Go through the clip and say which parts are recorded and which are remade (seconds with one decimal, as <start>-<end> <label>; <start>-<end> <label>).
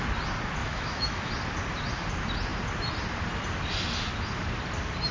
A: 0.0-0.6 recorded; 0.6-1.3 remade; 1.3-5.1 recorded